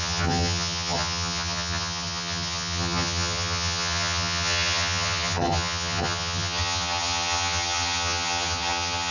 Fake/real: fake